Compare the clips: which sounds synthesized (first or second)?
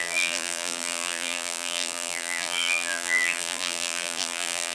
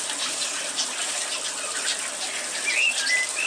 first